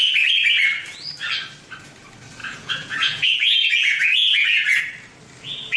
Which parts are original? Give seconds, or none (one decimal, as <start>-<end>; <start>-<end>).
0.0-2.4; 4.8-5.8